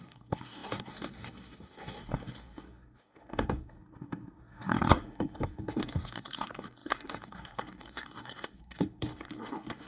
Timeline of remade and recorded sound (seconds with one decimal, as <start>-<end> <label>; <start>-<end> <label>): 0.0-9.9 remade